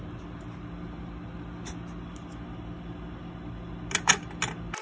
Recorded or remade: recorded